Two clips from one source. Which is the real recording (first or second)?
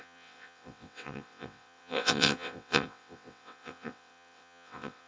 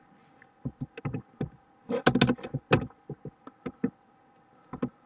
second